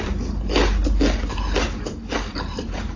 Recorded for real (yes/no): yes